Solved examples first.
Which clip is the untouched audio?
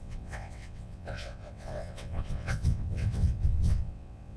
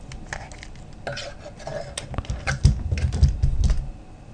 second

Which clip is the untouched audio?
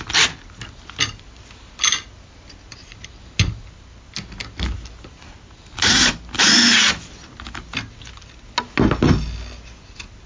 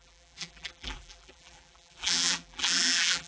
first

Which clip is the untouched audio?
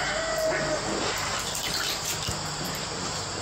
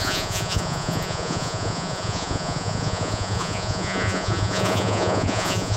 first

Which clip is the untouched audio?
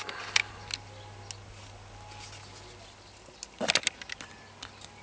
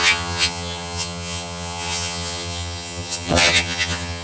first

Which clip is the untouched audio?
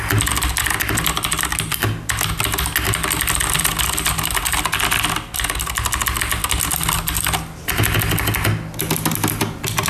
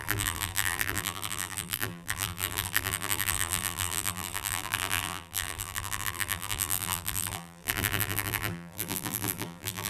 first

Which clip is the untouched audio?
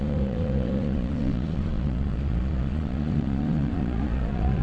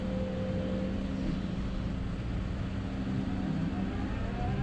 second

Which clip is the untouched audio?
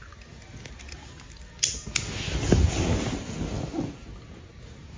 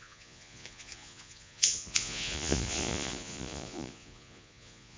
first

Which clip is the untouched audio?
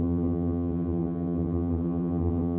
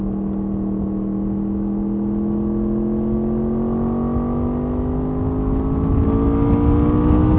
second